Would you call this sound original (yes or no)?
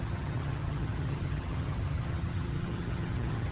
no